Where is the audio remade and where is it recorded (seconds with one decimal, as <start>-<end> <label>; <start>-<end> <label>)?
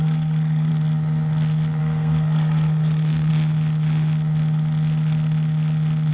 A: 0.0-0.7 remade; 0.7-1.8 recorded; 1.8-3.3 remade; 3.3-6.1 recorded